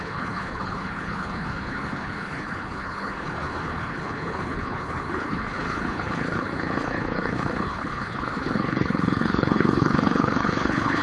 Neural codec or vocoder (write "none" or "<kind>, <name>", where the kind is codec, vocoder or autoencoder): codec, HILCodec